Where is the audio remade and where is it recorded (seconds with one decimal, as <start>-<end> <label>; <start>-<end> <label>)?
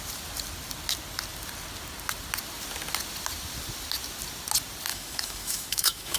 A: 0.0-4.9 recorded; 4.9-6.2 remade